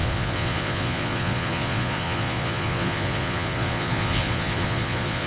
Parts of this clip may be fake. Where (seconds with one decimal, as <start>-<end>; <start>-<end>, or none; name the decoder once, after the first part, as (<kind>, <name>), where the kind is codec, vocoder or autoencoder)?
0.0-5.3 (vocoder, Vocos)